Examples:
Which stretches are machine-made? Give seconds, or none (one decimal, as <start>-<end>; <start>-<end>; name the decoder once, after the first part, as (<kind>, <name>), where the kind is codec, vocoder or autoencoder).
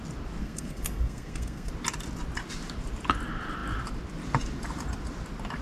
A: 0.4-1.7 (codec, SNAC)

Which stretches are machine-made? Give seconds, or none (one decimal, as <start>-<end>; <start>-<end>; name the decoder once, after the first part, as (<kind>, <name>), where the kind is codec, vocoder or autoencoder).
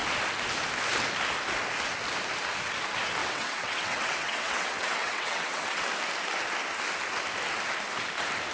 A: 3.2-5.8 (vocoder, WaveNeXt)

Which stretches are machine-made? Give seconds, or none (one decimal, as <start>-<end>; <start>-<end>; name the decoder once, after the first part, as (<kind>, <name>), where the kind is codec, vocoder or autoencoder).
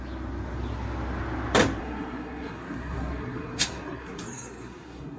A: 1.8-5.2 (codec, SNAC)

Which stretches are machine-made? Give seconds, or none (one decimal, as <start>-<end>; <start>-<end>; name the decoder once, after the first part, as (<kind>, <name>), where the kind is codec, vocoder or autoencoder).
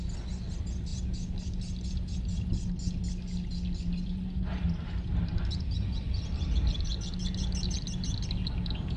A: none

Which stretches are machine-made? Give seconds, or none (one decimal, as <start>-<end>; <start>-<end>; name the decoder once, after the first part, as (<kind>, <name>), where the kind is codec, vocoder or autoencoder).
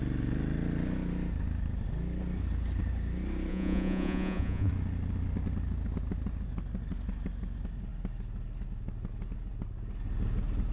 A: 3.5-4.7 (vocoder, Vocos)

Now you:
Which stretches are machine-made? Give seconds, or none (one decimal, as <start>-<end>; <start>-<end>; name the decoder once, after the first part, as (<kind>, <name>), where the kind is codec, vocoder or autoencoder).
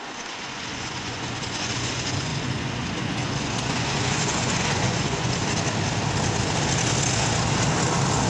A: 0.0-5.4 (vocoder, Vocos)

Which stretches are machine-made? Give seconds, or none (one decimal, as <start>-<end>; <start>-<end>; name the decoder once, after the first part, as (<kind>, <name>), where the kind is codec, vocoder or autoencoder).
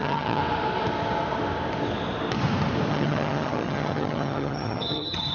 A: 0.0-0.4 (vocoder, HiFi-GAN); 2.9-5.3